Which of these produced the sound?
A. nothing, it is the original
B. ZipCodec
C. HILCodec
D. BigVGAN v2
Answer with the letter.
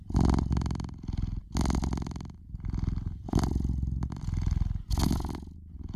A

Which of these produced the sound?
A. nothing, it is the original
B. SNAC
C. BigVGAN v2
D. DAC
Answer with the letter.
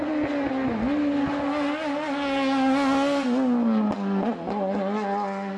A